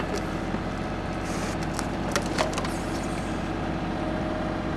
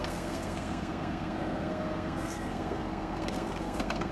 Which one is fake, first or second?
second